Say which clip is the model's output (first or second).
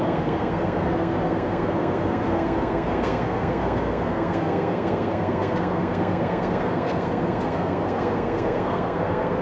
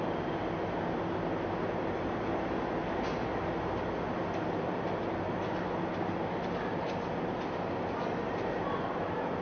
first